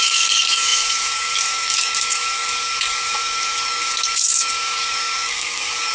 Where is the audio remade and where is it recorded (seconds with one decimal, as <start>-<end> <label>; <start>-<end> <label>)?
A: 0.0-5.9 remade